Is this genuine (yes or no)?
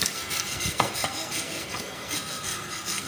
no